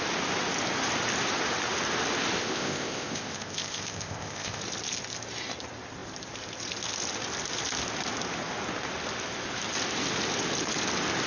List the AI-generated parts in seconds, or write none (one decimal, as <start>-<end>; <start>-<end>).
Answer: 2.4-4.6